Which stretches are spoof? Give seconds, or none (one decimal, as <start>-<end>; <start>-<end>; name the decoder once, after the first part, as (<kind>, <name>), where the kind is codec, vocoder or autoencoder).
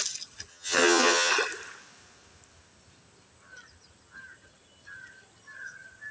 0.5-1.3 (vocoder, HiFi-GAN)